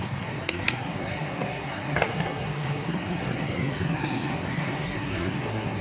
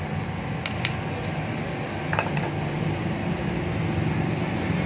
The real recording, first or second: second